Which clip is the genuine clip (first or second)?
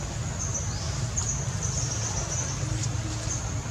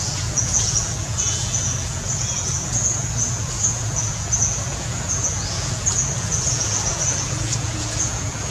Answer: first